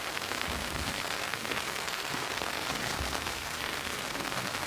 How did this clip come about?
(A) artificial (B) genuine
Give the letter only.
A